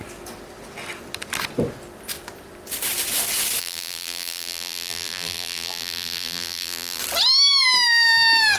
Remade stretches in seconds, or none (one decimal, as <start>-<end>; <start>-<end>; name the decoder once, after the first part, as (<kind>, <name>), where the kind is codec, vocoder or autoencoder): 3.6-7.0 (vocoder, BigVGAN v2)